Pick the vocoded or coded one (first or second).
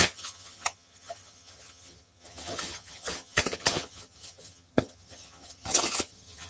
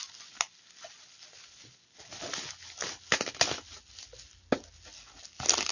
first